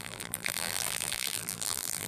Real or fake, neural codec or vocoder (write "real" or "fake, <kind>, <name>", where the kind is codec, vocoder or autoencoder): fake, vocoder, BigVGAN v2